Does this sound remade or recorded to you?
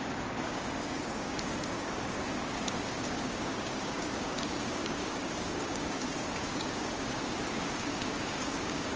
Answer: remade